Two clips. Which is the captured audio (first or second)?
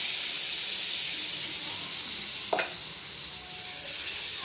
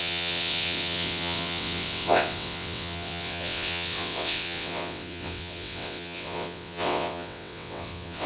first